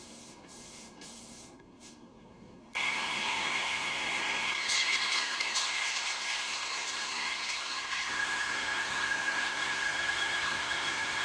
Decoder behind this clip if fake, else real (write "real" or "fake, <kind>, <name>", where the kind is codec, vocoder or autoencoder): fake, codec, SNAC